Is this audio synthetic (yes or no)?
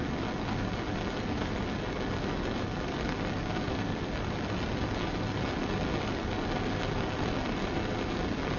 no